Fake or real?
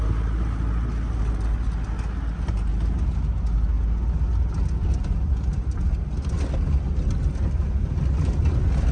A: real